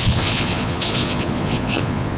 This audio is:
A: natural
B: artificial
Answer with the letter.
B